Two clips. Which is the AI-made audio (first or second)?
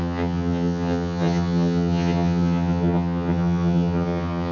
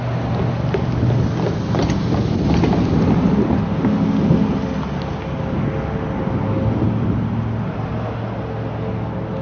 first